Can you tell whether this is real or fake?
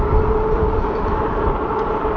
real